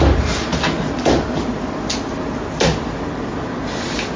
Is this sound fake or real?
real